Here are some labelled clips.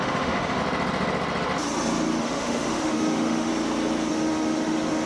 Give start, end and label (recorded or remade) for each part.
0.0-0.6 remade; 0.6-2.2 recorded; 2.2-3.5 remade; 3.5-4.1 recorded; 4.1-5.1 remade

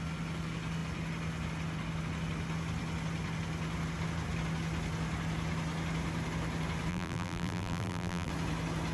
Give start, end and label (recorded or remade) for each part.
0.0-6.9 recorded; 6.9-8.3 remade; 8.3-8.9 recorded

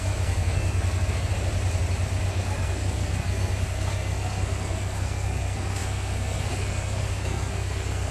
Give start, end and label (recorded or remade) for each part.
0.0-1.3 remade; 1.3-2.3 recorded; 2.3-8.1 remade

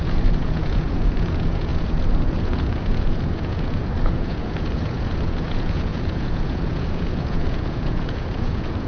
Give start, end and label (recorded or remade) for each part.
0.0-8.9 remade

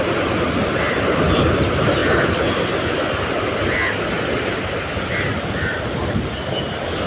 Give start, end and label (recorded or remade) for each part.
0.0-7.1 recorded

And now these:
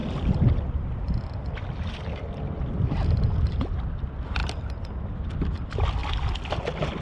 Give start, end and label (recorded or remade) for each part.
0.0-3.6 remade; 3.6-4.4 recorded; 4.4-5.3 remade; 5.3-7.0 recorded